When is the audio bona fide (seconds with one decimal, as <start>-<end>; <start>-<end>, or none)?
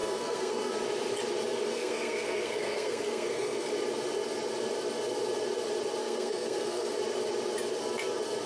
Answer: 0.7-1.7; 3.7-6.0; 6.9-8.5